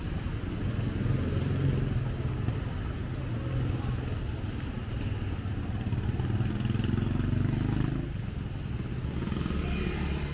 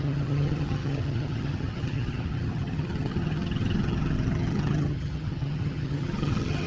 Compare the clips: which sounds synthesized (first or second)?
second